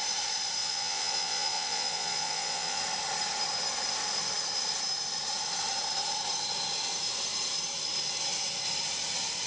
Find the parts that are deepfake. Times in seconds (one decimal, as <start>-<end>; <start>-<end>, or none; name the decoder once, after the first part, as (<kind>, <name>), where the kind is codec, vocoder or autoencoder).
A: 0.6-2.8 (vocoder, Vocos)